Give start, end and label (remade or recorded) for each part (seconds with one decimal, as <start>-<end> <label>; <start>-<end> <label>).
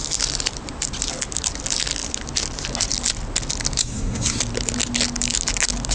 0.0-3.8 recorded; 3.8-4.4 remade; 4.4-5.9 recorded